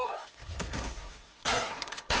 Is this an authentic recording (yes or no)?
no